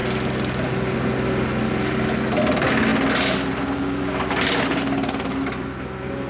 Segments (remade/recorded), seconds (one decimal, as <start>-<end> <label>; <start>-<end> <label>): 0.0-6.3 recorded